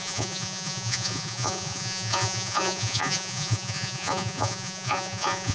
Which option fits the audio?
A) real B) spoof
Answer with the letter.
B